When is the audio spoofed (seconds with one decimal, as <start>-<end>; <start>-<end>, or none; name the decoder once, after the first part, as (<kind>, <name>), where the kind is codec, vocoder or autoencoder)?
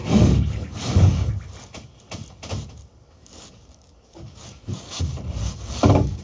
0.0-1.3 (codec, DAC); 3.0-5.0; 5.4-6.2